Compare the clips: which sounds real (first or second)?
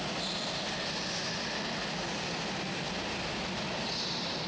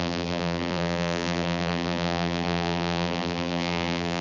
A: first